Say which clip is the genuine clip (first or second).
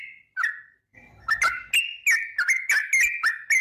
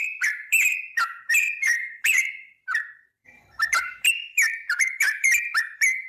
first